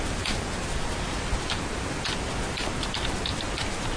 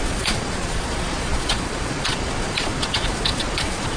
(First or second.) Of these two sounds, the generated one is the second